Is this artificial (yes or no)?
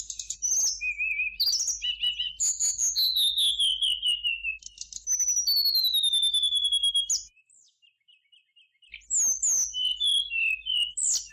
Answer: no